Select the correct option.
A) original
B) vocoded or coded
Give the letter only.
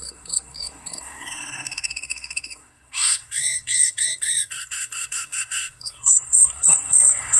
B